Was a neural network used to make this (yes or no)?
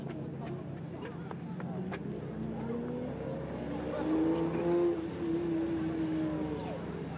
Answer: no